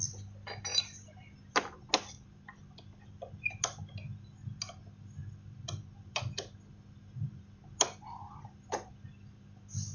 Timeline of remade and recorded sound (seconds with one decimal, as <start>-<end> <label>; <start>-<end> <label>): 0.0-9.9 recorded